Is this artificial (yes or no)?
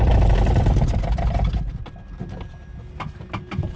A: no